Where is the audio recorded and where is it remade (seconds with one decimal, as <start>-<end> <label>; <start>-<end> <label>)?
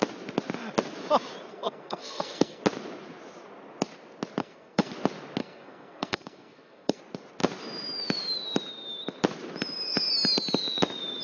0.0-1.5 recorded; 1.5-2.6 remade; 2.6-4.4 recorded; 4.4-4.9 remade; 4.9-5.4 recorded; 5.4-7.0 remade; 7.0-11.2 recorded